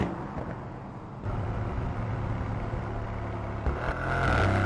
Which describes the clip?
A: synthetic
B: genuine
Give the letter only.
B